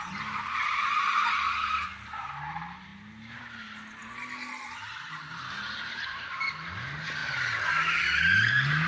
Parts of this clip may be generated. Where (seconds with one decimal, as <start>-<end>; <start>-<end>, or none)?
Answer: 0.0-2.9; 3.4-4.0; 4.9-7.2; 8.5-8.9